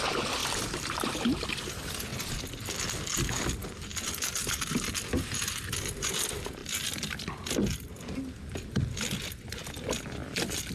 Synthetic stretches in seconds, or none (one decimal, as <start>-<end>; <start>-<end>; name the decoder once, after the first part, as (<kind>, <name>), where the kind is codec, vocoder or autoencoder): 0.4-1.1 (vocoder, BigVGAN v2)